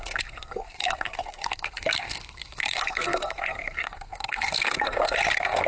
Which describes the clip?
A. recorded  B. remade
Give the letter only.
B